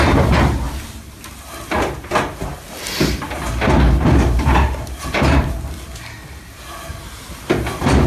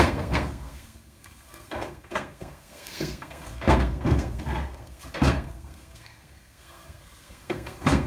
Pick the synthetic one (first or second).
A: second